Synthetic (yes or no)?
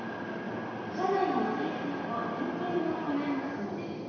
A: no